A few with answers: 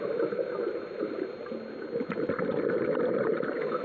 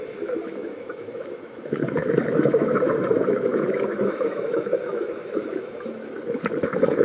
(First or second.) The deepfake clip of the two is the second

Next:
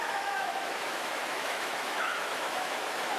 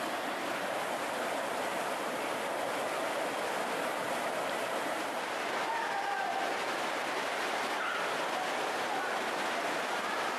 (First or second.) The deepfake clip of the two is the first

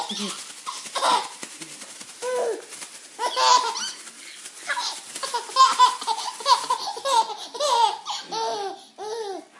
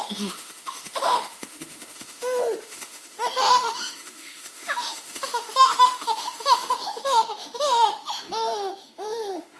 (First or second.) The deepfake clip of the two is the second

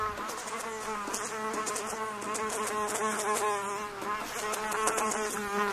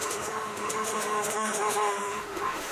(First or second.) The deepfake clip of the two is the second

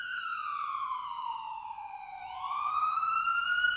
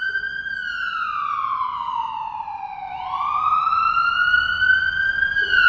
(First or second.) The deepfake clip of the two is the first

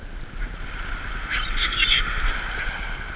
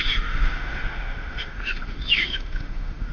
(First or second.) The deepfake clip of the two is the second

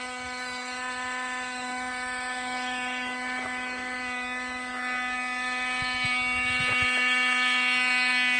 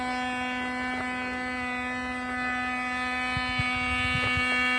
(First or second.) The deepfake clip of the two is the first